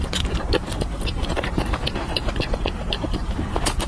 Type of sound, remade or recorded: remade